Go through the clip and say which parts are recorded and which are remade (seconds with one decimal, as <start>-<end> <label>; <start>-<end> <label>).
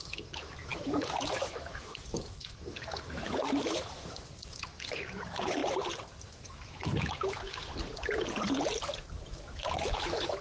0.0-5.6 remade; 5.6-6.3 recorded; 6.3-7.7 remade; 7.7-9.3 recorded; 9.3-10.4 remade